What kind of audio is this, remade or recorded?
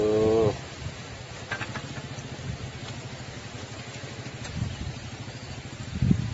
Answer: recorded